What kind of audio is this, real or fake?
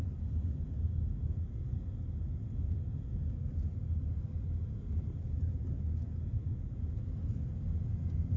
real